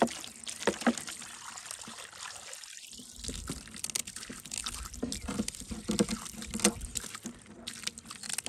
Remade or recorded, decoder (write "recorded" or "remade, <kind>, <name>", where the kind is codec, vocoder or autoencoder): recorded